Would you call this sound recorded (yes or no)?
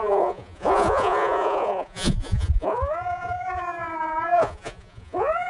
no